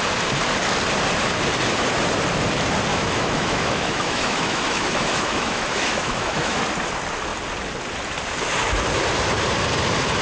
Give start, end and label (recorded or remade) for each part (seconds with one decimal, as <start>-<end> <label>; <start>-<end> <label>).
0.0-2.9 recorded; 2.9-6.6 remade; 6.6-10.2 recorded